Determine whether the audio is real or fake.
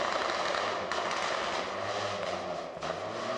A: real